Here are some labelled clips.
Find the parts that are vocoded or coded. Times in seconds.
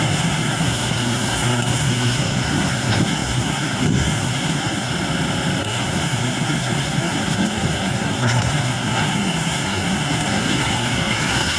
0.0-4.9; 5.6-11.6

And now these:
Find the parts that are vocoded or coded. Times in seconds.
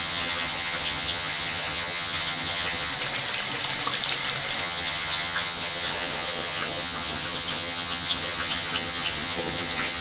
0.0-2.9; 4.6-10.0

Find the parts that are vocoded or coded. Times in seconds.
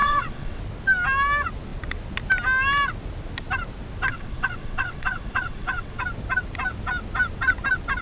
0.0-0.6; 4.1-6.0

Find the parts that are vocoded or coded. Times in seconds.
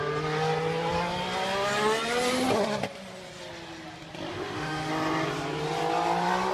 4.3-4.9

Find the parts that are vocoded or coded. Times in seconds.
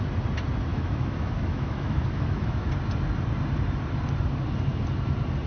0.7-2.7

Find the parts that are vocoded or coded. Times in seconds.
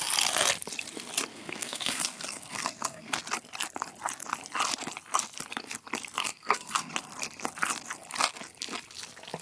1.3-3.2; 6.2-6.9